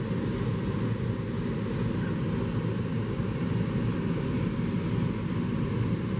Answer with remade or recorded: recorded